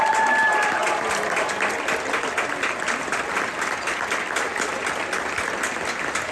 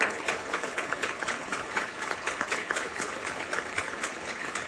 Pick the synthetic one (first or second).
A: second